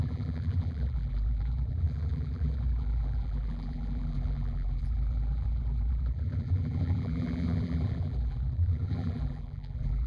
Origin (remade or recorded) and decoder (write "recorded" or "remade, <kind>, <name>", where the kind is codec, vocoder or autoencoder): remade, vocoder, BigVGAN v2